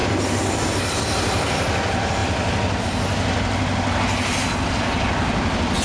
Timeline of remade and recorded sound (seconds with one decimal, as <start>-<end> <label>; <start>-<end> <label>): 0.0-0.8 remade; 0.8-5.8 recorded